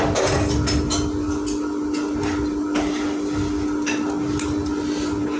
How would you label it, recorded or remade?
recorded